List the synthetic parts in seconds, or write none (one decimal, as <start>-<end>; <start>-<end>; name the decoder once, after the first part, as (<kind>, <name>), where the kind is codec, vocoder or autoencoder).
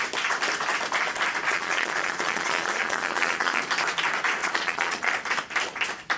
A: 1.5-3.6 (vocoder, Vocos); 4.4-5.1